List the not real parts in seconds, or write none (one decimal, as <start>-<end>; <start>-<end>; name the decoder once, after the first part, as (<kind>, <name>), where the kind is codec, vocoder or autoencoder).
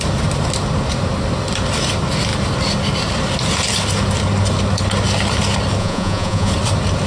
5.8-6.5 (vocoder, Vocos)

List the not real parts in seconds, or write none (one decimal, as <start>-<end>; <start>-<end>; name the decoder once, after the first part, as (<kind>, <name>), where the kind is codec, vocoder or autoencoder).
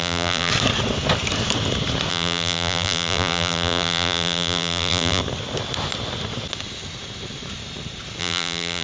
0.0-0.5 (vocoder, BigVGAN v2); 2.1-5.2; 8.2-8.8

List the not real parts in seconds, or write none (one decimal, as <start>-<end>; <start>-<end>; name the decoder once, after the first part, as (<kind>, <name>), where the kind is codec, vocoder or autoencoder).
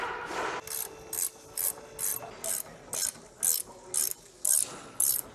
none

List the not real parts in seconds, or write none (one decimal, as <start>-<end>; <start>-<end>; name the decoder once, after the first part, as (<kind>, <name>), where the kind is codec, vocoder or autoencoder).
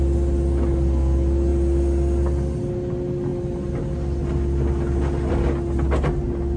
none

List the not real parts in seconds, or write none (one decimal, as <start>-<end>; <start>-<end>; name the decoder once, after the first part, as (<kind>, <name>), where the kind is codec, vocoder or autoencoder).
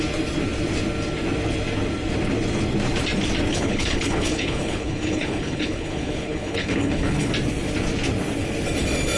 3.5-7.3 (codec, HILCodec)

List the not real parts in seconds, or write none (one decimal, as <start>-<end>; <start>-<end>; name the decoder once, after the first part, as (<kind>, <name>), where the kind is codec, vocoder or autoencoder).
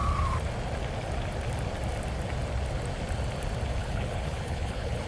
3.8-5.1 (codec, HILCodec)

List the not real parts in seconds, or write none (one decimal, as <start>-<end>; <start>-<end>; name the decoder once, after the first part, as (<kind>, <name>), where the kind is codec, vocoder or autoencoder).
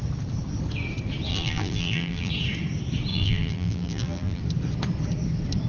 1.3-2.3 (vocoder, BigVGAN v2); 3.1-4.4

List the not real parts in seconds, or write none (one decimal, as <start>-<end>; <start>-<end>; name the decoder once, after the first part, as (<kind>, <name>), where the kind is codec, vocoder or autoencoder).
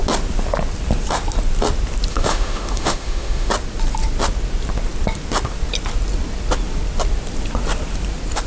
2.1-3.5 (autoencoder, DAC-VAE)